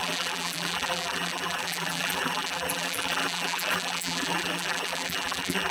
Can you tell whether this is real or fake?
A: fake